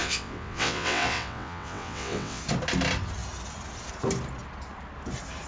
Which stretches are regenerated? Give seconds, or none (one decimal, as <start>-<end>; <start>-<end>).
0.0-2.4